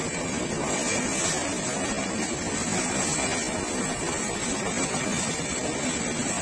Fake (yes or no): no